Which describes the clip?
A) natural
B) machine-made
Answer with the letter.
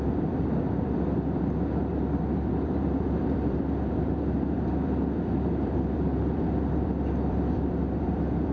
B